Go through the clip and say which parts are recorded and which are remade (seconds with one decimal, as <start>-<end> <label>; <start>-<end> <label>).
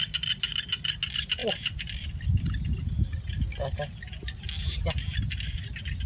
0.0-1.4 recorded; 1.4-2.6 remade; 2.6-4.6 recorded; 4.6-6.1 remade